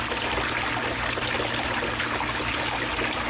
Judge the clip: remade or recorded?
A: recorded